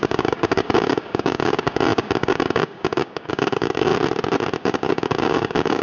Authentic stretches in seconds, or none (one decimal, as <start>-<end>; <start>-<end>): 3.9-4.6